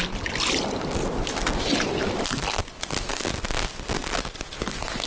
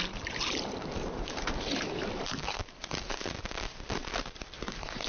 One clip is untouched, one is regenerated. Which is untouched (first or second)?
first